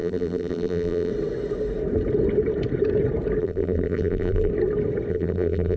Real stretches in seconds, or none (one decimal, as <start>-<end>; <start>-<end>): 1.1-3.4; 4.5-5.1